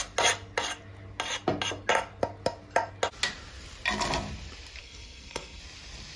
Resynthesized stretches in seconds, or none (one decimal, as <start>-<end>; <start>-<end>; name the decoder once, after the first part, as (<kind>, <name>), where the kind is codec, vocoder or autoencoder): 4.8-5.6 (codec, SNAC)